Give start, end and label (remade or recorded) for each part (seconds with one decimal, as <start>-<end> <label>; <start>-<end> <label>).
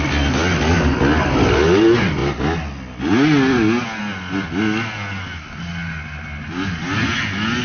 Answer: 0.0-7.6 recorded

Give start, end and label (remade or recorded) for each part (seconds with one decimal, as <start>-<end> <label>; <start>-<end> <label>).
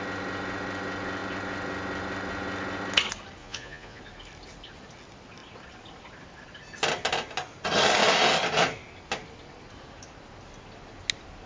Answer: 0.0-3.4 recorded; 3.4-4.0 remade; 4.0-11.5 recorded